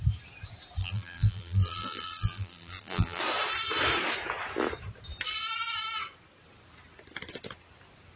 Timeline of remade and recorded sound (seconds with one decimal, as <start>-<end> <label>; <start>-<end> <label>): 0.0-0.8 recorded; 0.8-3.2 remade; 3.2-8.2 recorded